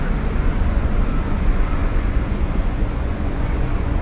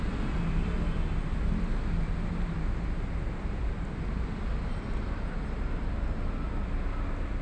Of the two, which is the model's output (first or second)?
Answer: first